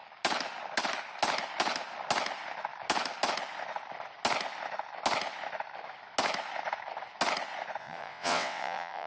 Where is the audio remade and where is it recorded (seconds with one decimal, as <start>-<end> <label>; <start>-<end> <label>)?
0.0-7.8 recorded; 7.8-9.1 remade